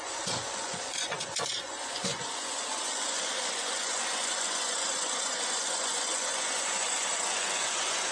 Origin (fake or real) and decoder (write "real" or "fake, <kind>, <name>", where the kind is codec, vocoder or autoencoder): fake, vocoder, Vocos